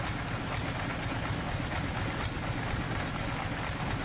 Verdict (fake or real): real